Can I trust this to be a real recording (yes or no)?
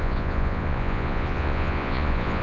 no